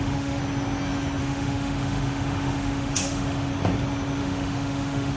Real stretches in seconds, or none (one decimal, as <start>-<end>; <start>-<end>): 0.4-1.2; 3.5-4.2